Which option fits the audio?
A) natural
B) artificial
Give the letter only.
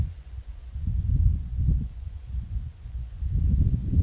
B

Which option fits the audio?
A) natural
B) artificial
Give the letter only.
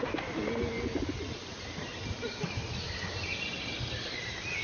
A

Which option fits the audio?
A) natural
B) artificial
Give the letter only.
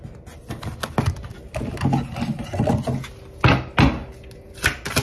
A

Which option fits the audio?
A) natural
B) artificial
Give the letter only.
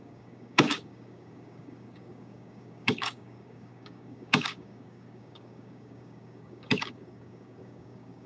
B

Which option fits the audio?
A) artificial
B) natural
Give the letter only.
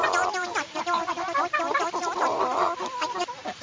A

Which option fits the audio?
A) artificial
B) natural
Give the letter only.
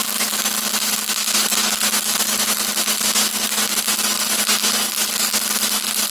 B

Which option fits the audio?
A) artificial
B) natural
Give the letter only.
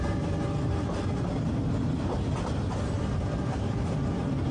B